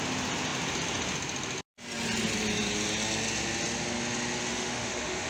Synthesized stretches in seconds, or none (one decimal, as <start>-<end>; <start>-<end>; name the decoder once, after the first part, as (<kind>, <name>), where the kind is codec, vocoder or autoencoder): 4.5-5.3 (autoencoder, DAC-VAE)